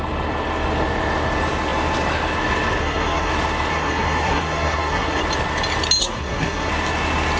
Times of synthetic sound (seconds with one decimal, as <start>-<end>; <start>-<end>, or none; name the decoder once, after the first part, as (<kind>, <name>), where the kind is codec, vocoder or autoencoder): 2.8-3.3 (codec, SNAC); 3.7-5.2; 6.0-6.7